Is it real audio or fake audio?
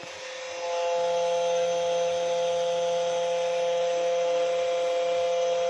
real